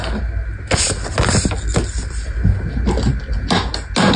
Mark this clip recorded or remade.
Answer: recorded